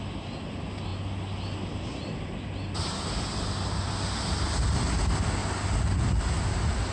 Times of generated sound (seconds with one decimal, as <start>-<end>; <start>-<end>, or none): none